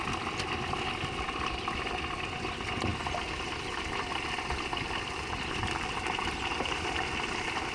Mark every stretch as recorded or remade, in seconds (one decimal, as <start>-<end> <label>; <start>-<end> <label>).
0.0-7.7 recorded